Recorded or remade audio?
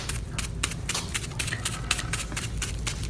remade